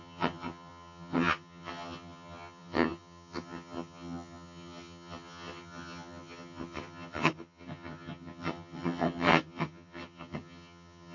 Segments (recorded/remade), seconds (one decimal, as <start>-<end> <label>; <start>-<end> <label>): 0.0-11.1 remade

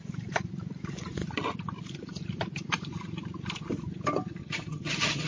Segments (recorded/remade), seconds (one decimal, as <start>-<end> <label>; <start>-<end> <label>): 0.0-4.4 recorded; 4.4-5.3 remade

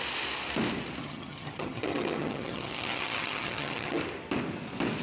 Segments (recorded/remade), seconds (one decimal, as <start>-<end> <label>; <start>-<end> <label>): 0.0-1.0 recorded; 1.0-4.0 remade; 4.0-5.0 recorded

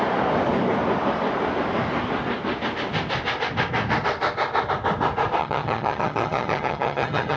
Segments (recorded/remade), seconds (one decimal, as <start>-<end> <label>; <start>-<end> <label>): 0.0-5.4 recorded; 5.4-7.4 remade

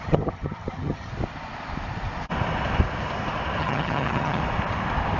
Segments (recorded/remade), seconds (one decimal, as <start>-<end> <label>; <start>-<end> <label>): 0.0-1.1 remade; 1.1-3.6 recorded; 3.6-4.4 remade; 4.4-5.2 recorded